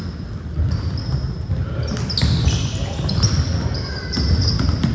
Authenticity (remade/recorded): recorded